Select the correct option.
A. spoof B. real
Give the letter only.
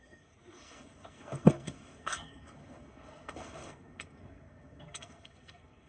A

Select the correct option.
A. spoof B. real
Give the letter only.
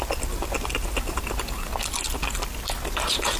B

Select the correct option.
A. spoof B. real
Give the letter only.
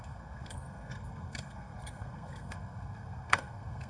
A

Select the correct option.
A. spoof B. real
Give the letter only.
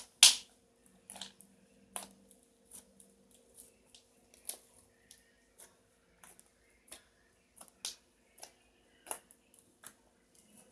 B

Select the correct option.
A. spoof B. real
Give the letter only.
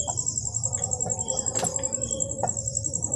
B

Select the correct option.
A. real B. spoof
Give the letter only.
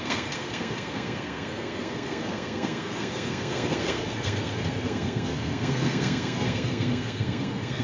B